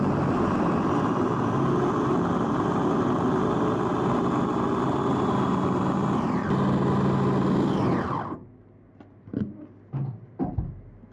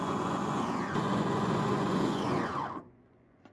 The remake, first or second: second